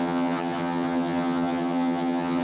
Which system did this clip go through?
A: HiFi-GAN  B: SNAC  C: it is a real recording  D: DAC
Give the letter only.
A